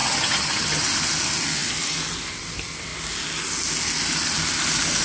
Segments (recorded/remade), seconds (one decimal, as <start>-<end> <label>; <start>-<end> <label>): 0.0-0.8 remade; 0.8-5.0 recorded